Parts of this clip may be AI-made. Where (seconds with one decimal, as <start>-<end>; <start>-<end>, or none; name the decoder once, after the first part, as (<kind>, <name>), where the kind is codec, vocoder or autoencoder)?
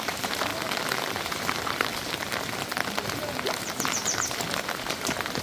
0.0-0.5 (vocoder, BigVGAN v2); 1.2-1.9; 4.8-5.4